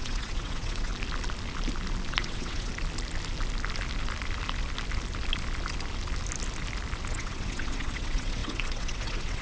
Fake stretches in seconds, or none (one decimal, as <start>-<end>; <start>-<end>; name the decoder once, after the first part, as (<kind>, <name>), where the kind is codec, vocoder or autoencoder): 0.0-0.9 (vocoder, WaveNeXt); 2.1-2.7; 7.1-9.4